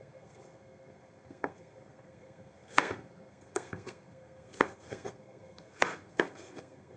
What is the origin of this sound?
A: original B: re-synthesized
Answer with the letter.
B